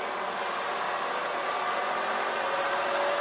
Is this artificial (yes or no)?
no